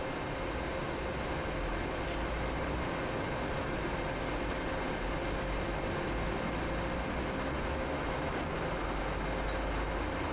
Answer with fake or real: real